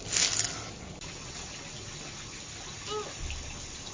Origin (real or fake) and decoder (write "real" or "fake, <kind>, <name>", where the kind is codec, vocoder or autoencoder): real